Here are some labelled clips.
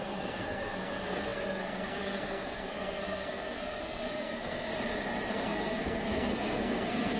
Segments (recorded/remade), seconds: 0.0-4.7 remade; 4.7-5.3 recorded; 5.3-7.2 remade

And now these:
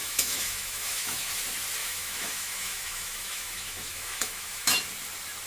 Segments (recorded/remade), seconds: 0.0-1.3 remade; 1.3-1.8 recorded; 1.8-4.9 remade; 4.9-5.5 recorded

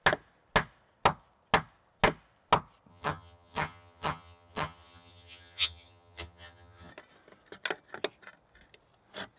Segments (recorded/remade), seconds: 0.0-2.9 recorded; 2.9-6.9 remade; 6.9-9.4 recorded

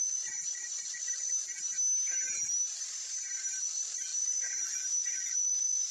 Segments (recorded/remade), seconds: 0.0-1.5 remade; 1.5-3.6 recorded; 3.6-5.9 remade